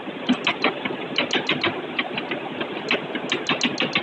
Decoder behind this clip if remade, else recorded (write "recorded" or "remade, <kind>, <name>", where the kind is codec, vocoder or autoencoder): recorded